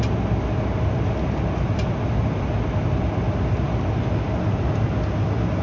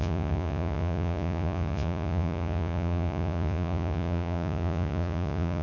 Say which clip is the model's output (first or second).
second